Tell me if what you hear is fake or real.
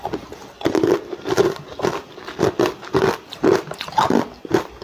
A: real